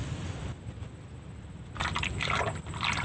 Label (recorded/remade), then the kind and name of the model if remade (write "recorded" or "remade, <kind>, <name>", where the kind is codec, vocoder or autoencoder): recorded